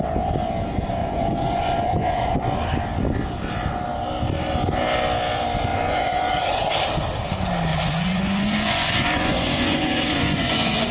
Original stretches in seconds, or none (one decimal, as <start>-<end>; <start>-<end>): 0.0-1.0; 2.4-5.7; 6.6-7.7